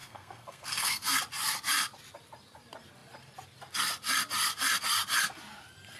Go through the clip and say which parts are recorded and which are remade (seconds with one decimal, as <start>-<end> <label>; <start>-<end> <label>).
0.0-1.2 remade; 1.2-6.0 recorded